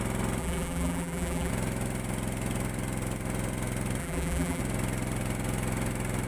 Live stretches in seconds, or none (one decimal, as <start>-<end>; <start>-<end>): 0.0-0.4; 1.5-4.0; 4.6-6.3